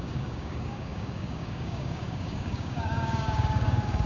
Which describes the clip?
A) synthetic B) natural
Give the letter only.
A